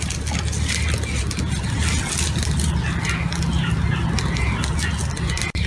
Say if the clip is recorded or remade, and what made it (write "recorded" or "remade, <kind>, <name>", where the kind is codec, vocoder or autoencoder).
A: recorded